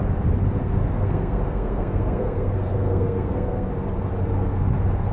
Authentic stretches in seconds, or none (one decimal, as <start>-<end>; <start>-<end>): 0.0-0.6; 3.7-5.1